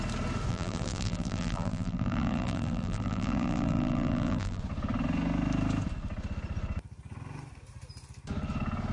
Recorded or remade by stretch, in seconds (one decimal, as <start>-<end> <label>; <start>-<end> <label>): 0.0-0.5 recorded; 0.5-4.6 remade; 4.6-8.9 recorded